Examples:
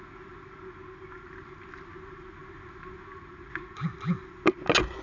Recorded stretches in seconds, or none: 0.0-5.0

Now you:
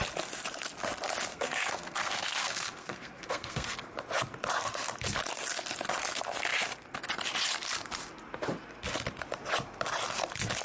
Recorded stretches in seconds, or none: 0.0-1.3; 3.9-10.6